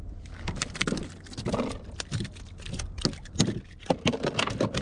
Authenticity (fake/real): real